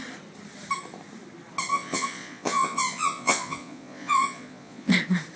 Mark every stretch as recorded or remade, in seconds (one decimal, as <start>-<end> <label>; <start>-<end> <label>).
0.0-1.7 recorded; 1.7-4.9 remade; 4.9-5.4 recorded